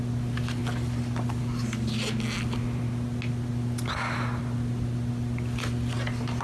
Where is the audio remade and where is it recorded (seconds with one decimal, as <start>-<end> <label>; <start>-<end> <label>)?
0.0-6.4 recorded